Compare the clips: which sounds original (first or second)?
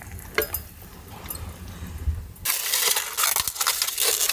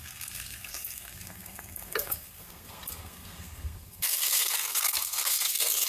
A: first